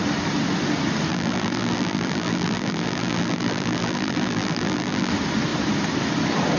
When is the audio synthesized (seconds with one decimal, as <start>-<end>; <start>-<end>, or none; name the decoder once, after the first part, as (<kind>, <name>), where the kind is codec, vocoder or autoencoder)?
1.1-5.1 (vocoder, BigVGAN v2)

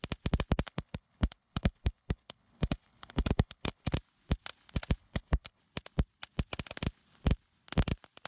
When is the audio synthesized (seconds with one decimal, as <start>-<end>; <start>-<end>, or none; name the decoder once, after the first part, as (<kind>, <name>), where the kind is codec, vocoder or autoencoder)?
0.7-3.9 (codec, HILCodec); 5.0-5.6

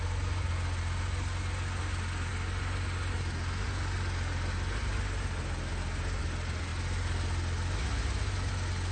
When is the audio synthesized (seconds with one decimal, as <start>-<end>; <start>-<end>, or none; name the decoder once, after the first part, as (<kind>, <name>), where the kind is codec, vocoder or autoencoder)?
none

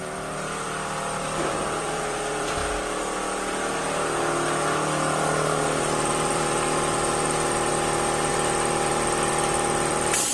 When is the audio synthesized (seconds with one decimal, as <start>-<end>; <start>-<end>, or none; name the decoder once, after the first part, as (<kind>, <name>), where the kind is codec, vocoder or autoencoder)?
0.0-2.6 (vocoder, BigVGAN v2); 5.8-7.7; 8.3-10.3

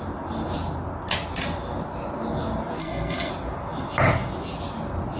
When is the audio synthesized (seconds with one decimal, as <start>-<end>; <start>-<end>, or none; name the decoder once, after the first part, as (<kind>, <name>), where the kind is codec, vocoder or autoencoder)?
2.8-3.3 (codec, SNAC)